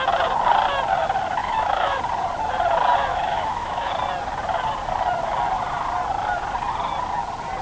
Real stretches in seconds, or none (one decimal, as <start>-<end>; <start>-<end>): 0.0-1.4; 2.0-3.1; 3.9-7.6